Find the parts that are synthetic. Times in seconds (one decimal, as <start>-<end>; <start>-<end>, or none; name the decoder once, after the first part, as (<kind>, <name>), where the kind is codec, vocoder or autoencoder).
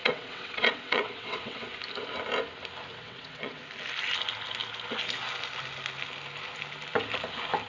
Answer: 0.0-1.7 (vocoder, WaveNeXt); 2.9-3.6